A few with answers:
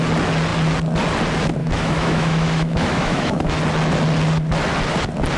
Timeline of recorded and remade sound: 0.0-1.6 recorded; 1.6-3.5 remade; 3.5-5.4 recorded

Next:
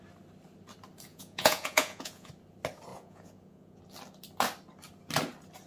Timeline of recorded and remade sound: 0.0-1.1 recorded; 1.1-2.3 remade; 2.3-2.9 recorded; 2.9-3.8 remade; 3.8-5.7 recorded